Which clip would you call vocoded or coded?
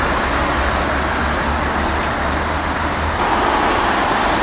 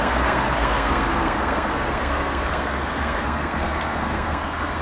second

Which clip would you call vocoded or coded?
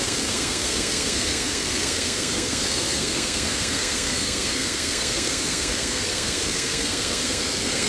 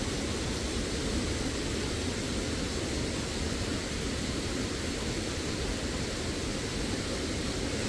first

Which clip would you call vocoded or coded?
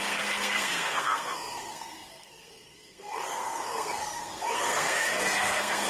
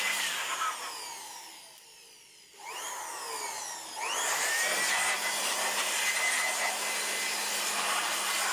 first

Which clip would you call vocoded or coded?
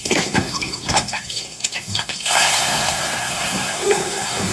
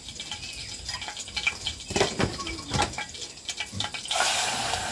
first